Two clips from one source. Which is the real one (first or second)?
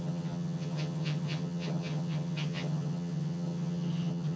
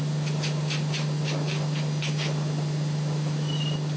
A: second